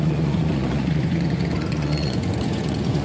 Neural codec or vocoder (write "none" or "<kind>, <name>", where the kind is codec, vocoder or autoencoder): vocoder, Vocos